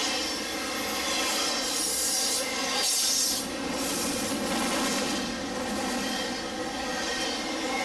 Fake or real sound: real